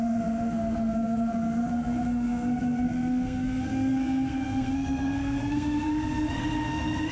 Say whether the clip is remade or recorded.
remade